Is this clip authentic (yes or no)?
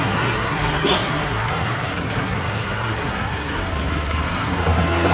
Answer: no